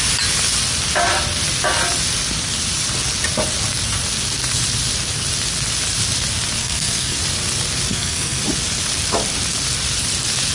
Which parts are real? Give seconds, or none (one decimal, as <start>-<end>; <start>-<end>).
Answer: 0.0-6.6; 7.2-7.9; 8.4-10.5